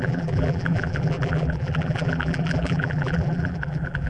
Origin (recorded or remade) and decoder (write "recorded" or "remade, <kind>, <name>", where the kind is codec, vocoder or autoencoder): remade, vocoder, BigVGAN v2